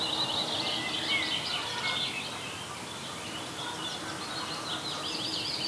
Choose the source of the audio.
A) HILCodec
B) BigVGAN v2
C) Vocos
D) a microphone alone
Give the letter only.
D